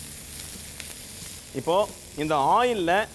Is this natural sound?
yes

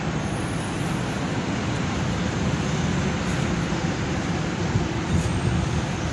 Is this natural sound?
yes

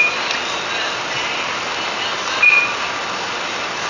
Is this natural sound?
yes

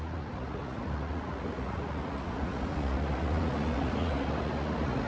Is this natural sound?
no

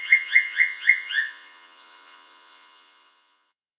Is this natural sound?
no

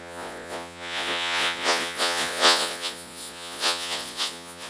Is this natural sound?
no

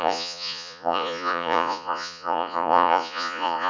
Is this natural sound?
no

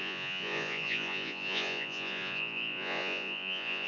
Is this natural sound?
no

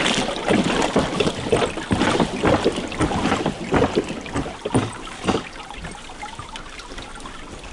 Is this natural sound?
yes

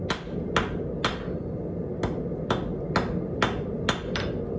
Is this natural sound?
yes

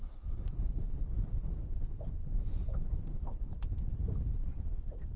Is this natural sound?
yes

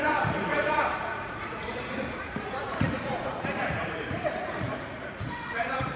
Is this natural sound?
no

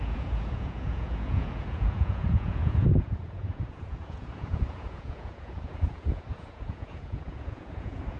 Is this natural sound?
no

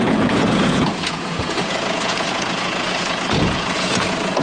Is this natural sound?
no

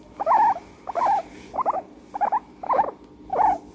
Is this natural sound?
yes